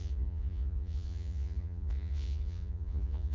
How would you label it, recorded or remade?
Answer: remade